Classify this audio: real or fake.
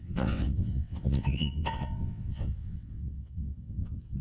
fake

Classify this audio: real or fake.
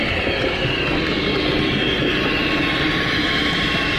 real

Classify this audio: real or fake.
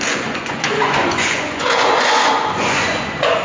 fake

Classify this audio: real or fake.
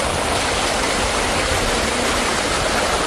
real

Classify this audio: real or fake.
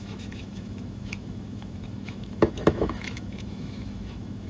fake